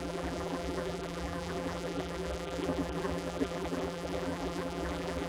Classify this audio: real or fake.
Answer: fake